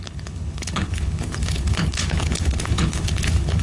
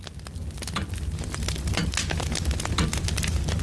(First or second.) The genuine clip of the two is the second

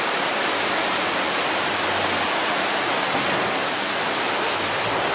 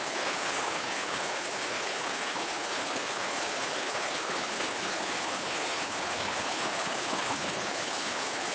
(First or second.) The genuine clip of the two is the first